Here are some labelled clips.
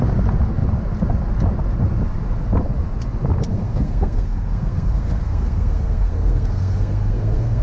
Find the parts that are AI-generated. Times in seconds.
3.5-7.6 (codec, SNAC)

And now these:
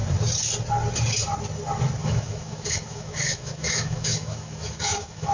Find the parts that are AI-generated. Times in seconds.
2.0-5.3 (autoencoder, DAC-VAE)

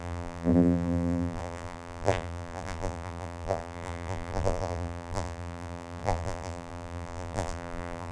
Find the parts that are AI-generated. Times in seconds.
0.0-8.1 (vocoder, BigVGAN v2)

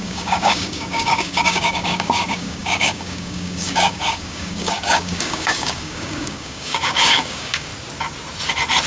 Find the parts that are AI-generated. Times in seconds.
0.0-7.7 (codec, DAC)

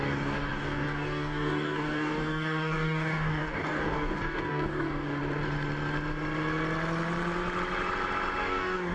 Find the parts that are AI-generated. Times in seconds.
0.0-5.2 (codec, DAC); 8.4-8.9

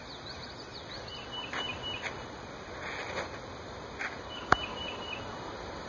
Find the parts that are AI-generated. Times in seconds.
none

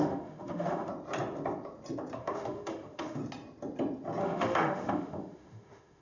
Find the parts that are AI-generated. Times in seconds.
0.0-0.9 (autoencoder, DAC-VAE); 2.2-3.2; 4.2-6.0